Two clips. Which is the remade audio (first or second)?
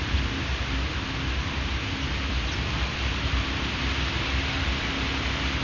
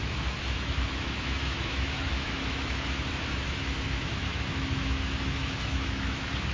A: second